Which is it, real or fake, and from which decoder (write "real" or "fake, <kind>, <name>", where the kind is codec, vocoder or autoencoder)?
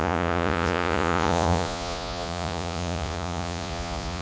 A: fake, vocoder, Vocos